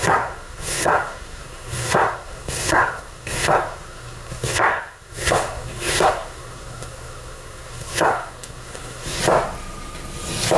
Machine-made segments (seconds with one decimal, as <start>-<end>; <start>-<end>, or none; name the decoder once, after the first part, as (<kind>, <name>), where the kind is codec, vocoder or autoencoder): 0.0-9.2 (codec, SNAC)